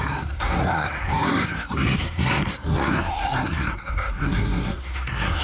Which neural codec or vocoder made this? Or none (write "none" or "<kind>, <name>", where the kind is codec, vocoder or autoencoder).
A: codec, SNAC